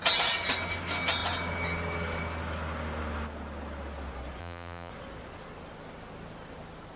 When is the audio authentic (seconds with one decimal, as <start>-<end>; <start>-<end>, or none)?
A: 0.0-4.4; 4.9-7.0